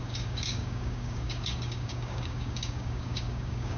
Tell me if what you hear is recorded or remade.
remade